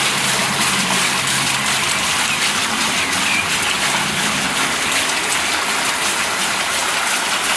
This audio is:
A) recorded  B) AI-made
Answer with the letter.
A